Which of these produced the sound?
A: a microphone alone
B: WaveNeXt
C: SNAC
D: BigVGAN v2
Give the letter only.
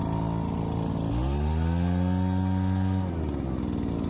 A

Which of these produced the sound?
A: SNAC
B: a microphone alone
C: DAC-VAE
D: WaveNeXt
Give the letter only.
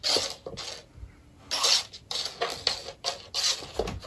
B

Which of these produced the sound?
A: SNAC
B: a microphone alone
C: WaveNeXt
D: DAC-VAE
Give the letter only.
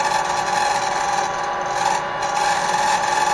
B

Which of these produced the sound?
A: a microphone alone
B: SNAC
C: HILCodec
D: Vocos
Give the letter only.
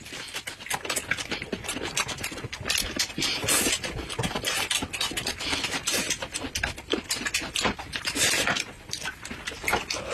A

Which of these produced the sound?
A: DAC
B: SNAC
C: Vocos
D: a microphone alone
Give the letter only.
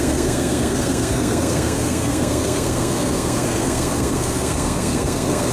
B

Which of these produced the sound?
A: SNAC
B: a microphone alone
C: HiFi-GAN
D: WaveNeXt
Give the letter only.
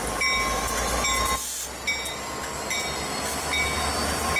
B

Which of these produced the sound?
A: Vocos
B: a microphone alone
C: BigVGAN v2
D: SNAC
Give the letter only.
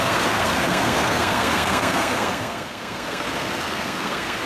D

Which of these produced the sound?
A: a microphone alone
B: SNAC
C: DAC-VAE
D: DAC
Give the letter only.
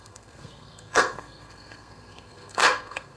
B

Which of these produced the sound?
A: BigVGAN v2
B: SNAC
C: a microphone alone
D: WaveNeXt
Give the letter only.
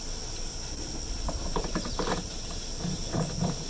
C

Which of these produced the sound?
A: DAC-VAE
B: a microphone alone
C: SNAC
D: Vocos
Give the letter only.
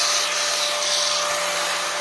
B